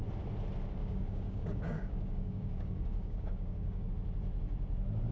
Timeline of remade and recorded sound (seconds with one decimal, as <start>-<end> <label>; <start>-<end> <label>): 0.0-0.8 recorded; 0.8-3.9 remade; 3.9-5.1 recorded